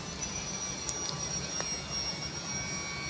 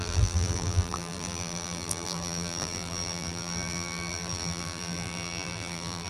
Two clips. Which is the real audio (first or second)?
first